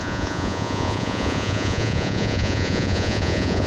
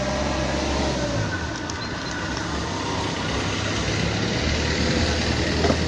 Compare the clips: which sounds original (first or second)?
second